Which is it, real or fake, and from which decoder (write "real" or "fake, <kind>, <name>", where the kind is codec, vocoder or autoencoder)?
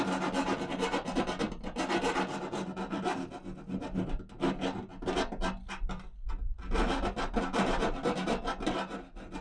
real